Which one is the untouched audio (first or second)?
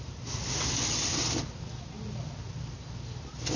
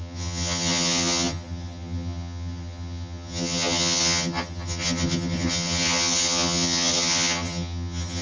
first